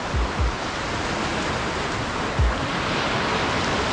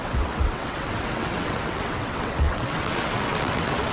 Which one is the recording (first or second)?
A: first